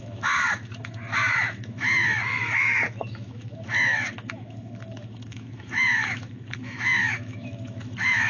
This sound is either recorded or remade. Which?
remade